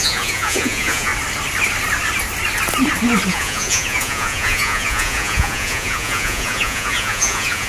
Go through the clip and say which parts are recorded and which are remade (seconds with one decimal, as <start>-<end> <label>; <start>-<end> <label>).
0.0-1.1 remade; 1.1-3.3 recorded; 3.3-7.7 remade